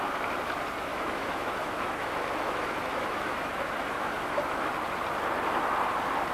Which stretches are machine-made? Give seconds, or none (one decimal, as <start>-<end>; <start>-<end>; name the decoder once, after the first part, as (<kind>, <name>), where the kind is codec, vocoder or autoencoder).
0.9-4.7 (autoencoder, DAC-VAE)